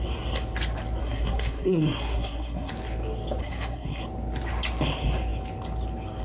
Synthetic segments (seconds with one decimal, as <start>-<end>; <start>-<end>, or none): 1.0-2.7; 3.4-4.0